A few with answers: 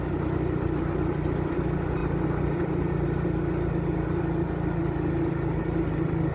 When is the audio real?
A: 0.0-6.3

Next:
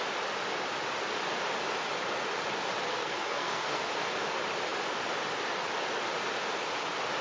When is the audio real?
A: 0.0-2.9; 3.9-7.2